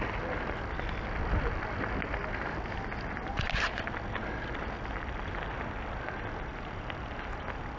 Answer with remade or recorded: recorded